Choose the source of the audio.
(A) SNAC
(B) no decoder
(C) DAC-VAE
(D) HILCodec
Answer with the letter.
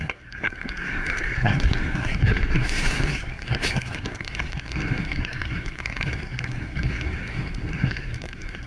A